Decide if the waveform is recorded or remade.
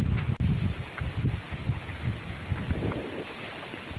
recorded